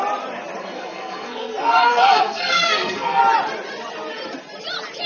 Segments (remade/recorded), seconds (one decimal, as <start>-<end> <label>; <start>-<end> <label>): 0.0-0.6 recorded; 0.6-3.2 remade; 3.2-5.1 recorded